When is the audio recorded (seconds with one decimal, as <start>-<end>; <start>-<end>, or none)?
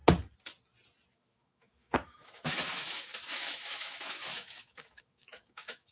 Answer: 0.0-1.1